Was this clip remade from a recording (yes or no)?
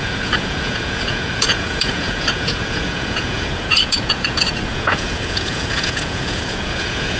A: yes